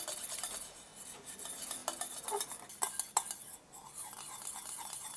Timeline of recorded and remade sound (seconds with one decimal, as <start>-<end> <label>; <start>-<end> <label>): 0.0-5.2 recorded